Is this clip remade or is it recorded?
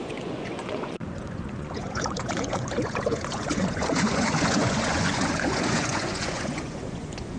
remade